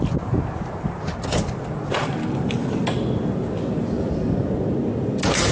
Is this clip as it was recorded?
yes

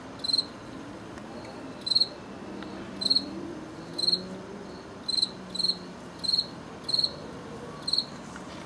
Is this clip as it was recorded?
yes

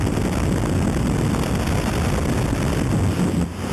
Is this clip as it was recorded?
yes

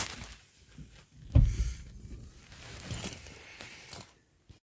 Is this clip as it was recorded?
yes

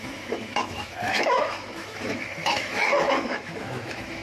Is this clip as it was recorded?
no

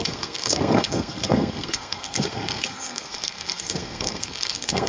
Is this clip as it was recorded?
no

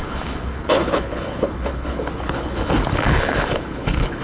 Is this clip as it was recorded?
no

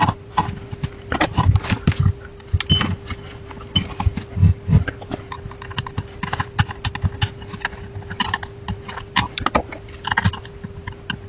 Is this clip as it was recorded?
yes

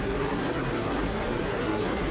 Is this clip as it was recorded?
no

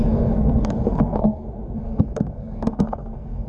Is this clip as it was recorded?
no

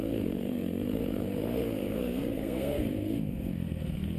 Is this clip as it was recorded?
no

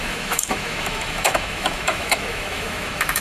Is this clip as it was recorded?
no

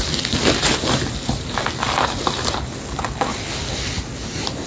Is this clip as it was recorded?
yes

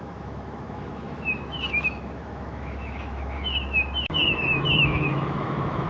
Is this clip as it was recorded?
no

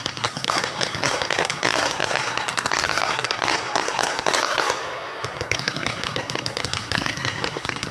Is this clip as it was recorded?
no